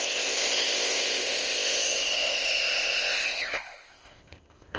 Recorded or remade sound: remade